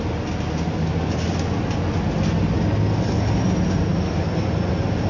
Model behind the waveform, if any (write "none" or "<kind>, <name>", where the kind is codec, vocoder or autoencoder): none